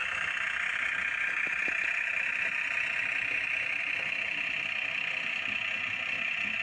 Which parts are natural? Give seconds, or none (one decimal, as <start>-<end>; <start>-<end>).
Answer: 0.0-6.6